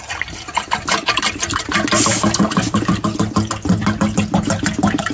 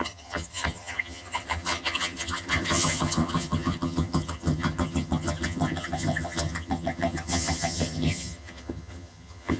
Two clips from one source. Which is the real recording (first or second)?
first